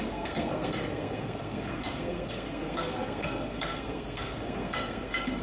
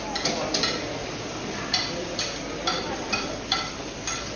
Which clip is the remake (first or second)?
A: first